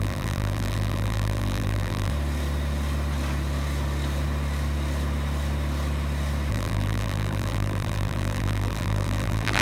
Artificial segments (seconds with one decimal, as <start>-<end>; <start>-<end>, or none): 0.0-2.1; 6.5-9.6